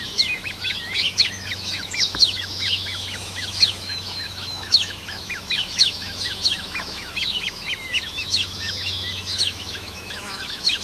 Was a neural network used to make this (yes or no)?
yes